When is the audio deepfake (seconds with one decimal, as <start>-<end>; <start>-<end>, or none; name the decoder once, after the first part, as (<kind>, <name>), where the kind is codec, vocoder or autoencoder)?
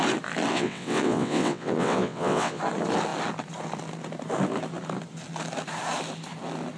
0.5-2.6 (vocoder, WaveNeXt)